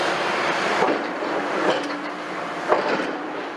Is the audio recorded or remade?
remade